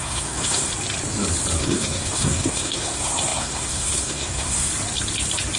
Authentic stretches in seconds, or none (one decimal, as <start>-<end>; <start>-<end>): 0.7-1.6; 4.7-5.6